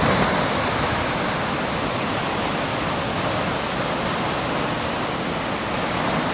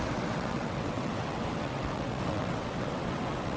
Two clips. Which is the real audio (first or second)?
first